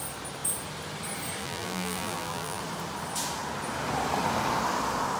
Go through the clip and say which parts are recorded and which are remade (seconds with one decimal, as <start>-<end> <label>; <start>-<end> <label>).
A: 0.0-1.4 recorded; 1.4-2.6 remade; 2.6-5.2 recorded